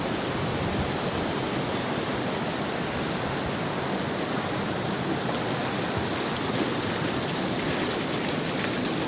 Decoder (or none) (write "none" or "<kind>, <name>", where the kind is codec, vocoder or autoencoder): none